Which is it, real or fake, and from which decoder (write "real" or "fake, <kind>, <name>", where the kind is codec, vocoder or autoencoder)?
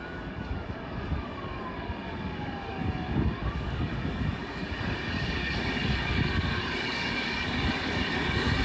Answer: fake, codec, DAC